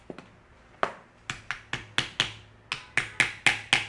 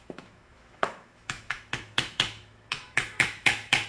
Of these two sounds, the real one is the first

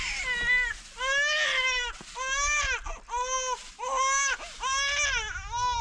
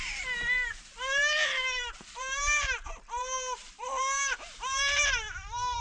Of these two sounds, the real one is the first